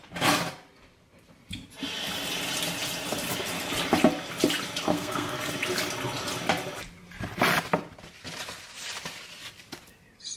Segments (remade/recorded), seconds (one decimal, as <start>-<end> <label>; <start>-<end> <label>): 0.0-4.9 recorded; 4.9-5.4 remade; 5.4-10.4 recorded